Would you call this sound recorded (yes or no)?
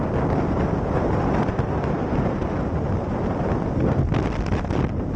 yes